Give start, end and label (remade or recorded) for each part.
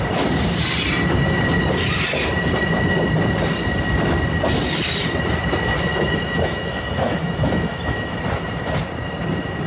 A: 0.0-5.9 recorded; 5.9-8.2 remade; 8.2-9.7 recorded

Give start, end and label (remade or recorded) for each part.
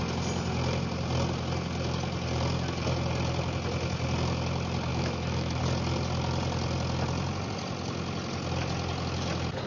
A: 0.0-4.9 recorded; 4.9-5.6 remade; 5.6-9.7 recorded